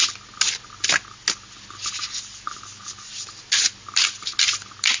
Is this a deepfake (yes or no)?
no